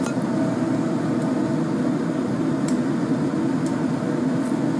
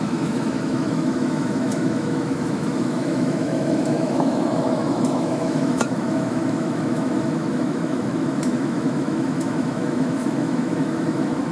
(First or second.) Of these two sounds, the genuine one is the first